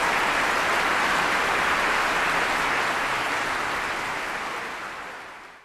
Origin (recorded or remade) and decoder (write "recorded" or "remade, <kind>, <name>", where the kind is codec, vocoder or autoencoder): recorded